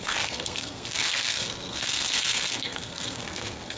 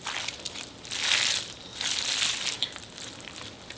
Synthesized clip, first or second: first